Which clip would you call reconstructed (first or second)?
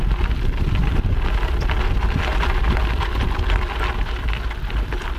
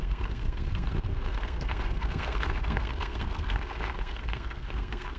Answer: second